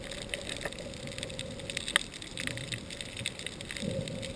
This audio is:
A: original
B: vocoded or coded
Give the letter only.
A